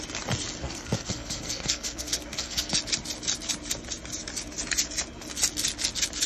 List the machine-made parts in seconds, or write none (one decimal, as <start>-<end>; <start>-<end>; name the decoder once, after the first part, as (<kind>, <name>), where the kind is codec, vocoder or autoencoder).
0.6-2.7 (codec, SNAC)